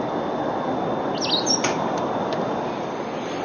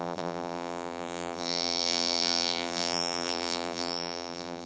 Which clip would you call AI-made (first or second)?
second